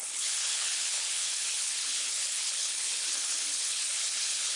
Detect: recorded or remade remade